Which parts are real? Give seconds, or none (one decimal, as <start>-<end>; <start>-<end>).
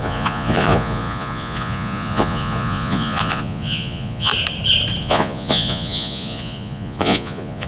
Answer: 4.3-5.0